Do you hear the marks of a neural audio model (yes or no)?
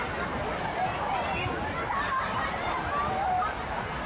no